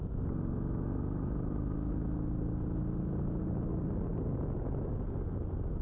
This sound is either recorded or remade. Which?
recorded